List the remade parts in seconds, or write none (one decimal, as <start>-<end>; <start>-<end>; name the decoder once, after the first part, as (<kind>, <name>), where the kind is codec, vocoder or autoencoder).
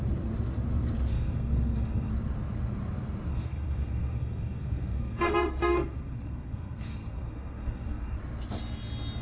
1.1-2.1 (codec, SNAC); 3.3-8.2